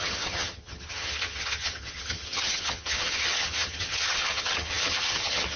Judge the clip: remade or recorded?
remade